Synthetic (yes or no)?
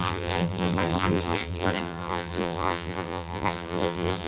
yes